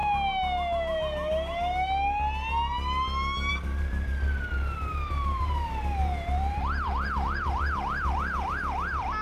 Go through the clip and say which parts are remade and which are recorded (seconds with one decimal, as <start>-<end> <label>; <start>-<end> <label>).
0.0-3.5 recorded; 3.5-9.2 remade